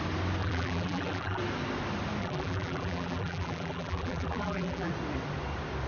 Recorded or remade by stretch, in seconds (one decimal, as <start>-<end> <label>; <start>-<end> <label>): 0.0-0.4 recorded; 0.4-1.4 remade; 1.4-2.2 recorded; 2.2-4.9 remade; 4.9-5.9 recorded